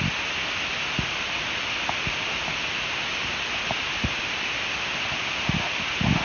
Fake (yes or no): no